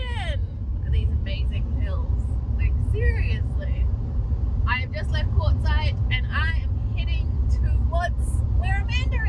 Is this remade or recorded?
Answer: recorded